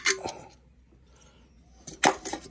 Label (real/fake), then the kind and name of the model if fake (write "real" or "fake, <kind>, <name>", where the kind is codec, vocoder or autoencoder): real